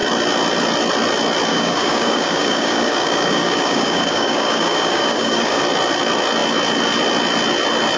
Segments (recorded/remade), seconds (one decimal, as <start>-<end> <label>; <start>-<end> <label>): 0.0-1.5 recorded; 1.5-5.6 remade; 5.6-8.0 recorded